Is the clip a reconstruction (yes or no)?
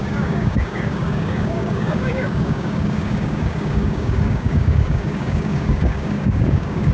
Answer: yes